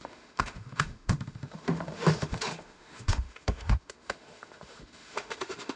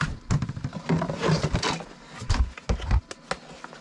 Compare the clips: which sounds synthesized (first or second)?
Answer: first